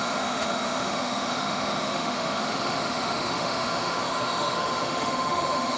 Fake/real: fake